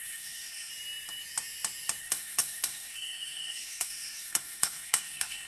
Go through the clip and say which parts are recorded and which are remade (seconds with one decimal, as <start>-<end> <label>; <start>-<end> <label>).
0.0-0.7 remade; 0.7-2.0 recorded; 2.0-5.5 remade